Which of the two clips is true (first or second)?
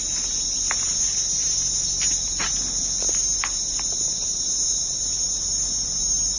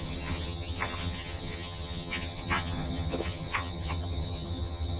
first